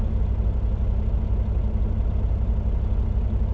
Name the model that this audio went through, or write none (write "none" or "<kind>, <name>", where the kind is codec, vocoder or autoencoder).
none